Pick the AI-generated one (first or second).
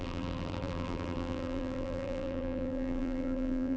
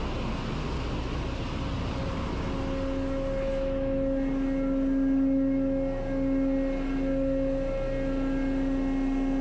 first